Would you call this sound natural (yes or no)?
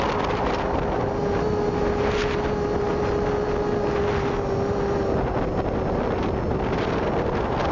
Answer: yes